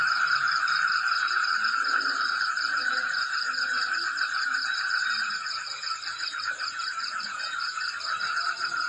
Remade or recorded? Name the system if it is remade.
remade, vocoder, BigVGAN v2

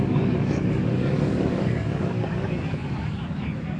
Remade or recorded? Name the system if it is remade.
remade, codec, DAC